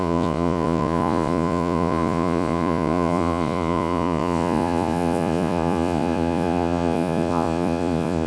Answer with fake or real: fake